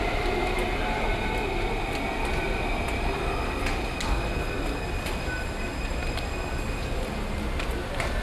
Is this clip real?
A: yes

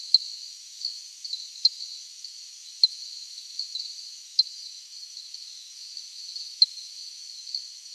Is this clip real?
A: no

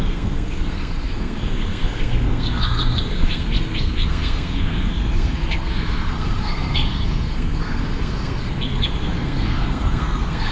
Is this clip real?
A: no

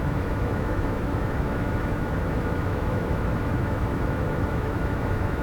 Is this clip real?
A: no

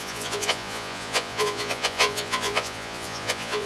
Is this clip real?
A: no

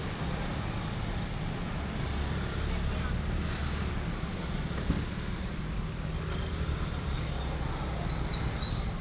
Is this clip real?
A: yes